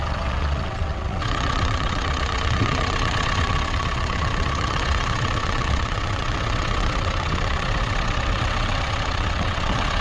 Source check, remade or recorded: remade